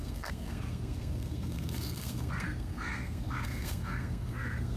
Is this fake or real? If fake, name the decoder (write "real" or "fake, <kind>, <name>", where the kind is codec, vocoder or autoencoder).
fake, codec, SNAC